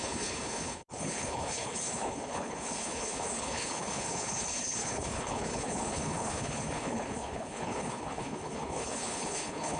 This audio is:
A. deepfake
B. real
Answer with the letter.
A